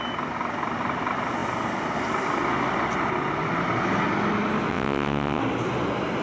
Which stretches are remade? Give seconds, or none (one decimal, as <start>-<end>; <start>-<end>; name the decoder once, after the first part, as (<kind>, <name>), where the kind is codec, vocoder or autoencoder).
4.7-5.4 (vocoder, WaveNeXt)